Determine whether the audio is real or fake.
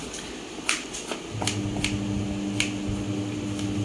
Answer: real